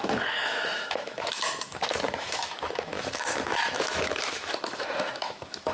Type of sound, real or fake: fake